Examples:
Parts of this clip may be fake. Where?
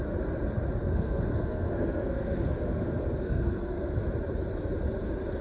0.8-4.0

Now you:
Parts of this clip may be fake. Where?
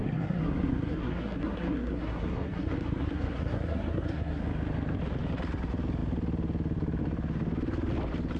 0.0-4.4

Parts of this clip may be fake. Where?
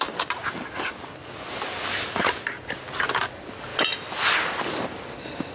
none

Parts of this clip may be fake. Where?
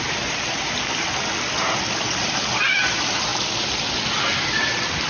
none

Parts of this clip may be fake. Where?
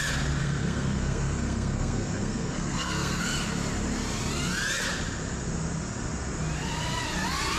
0.4-3.2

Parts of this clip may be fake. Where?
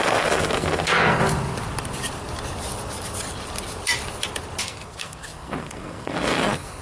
0.0-1.2; 4.6-6.8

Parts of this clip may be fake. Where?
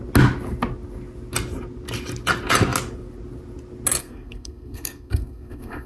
4.0-5.9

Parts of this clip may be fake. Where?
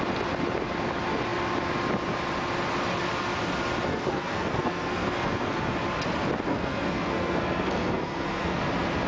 3.9-5.6; 6.5-8.6